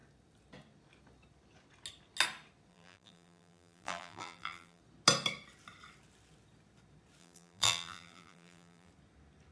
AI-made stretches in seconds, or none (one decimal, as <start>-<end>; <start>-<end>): 2.7-4.8; 7.2-8.9